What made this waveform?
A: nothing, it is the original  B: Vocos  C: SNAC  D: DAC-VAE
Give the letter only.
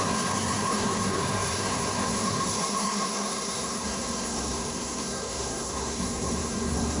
C